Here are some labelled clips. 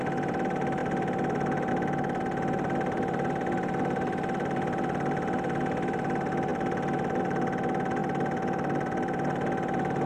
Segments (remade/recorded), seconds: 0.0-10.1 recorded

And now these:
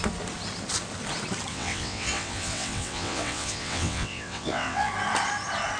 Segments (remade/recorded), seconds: 0.0-1.5 recorded; 1.5-4.9 remade; 4.9-5.8 recorded

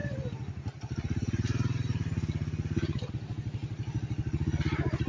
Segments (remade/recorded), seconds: 0.0-5.1 recorded

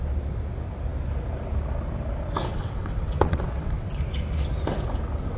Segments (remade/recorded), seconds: 0.0-2.5 recorded; 2.5-4.0 remade; 4.0-5.4 recorded

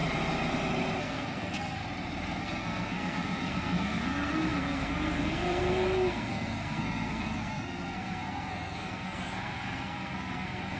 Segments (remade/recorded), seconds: 0.0-1.0 recorded; 1.0-1.8 remade; 1.8-2.4 recorded; 2.4-10.8 remade

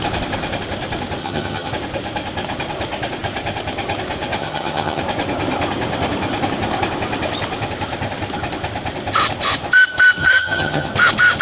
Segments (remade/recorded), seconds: 0.0-1.2 recorded; 1.2-1.7 remade; 1.7-4.4 recorded; 4.4-5.0 remade; 5.0-10.2 recorded; 10.2-10.9 remade; 10.9-11.4 recorded

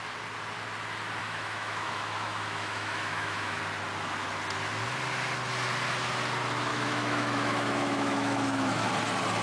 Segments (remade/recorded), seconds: 0.0-1.2 recorded; 1.2-3.6 remade; 3.6-6.7 recorded; 6.7-8.9 remade; 8.9-9.4 recorded